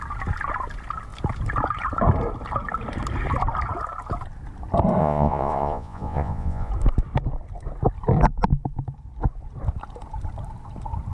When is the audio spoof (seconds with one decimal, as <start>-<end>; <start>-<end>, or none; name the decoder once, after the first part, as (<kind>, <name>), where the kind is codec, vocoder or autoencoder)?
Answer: 5.0-6.7 (vocoder, Vocos)